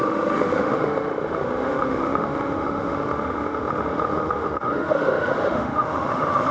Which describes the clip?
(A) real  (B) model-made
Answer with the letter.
B